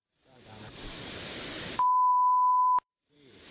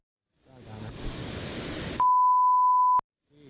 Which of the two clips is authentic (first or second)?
second